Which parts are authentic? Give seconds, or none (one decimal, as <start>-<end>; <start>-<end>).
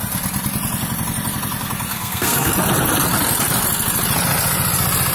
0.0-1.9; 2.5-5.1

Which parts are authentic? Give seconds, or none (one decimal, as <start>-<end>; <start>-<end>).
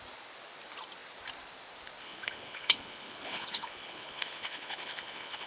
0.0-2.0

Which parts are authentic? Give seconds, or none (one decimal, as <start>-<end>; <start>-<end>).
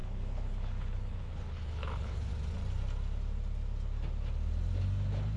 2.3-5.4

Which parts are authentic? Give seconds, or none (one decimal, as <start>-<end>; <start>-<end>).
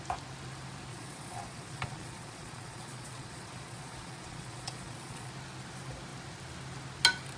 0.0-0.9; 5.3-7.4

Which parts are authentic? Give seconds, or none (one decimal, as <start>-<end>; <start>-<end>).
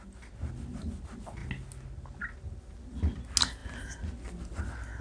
0.0-5.0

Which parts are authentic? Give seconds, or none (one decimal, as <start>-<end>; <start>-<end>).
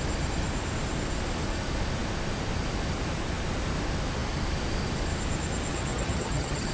0.0-5.7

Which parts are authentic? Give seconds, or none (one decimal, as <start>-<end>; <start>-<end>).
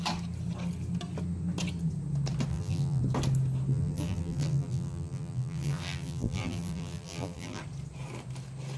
0.0-2.5; 3.0-3.7; 7.6-8.8